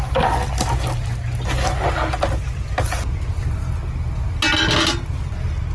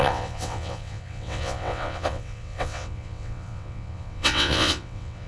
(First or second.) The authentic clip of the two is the first